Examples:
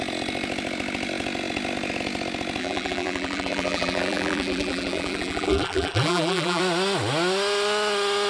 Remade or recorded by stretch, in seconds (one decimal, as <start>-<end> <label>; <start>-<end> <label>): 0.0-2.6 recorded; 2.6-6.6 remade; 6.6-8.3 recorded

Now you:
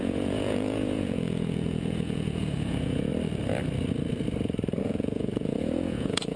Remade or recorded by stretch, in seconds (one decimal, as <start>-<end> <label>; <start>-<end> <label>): 0.0-3.1 remade; 3.1-4.8 recorded; 4.8-6.4 remade

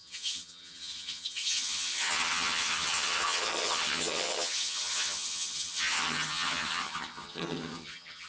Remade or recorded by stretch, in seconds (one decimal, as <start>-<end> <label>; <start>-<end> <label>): 0.0-8.3 remade

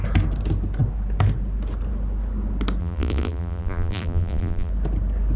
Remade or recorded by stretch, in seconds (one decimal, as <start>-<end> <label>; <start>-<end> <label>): 0.0-2.8 recorded; 2.8-4.7 remade; 4.7-5.4 recorded

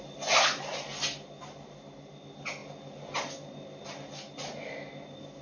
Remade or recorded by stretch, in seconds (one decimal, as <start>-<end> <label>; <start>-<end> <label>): 0.0-5.4 recorded